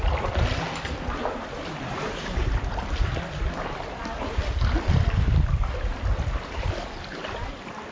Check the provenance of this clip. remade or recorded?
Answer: recorded